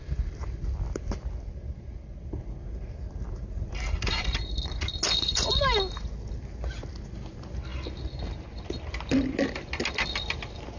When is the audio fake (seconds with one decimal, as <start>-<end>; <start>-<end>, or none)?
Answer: none